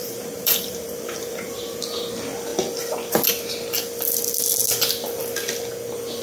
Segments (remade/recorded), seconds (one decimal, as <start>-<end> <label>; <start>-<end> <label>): 0.0-1.8 remade; 1.8-6.2 recorded